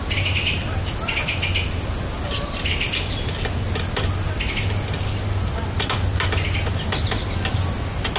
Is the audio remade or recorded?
recorded